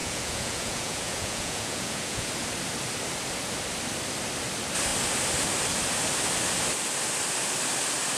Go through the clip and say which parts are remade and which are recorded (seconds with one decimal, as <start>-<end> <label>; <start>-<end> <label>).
0.0-2.3 remade; 2.3-8.2 recorded